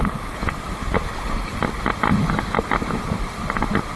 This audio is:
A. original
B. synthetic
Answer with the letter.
A